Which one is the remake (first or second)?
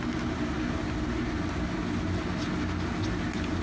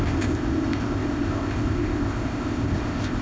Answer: second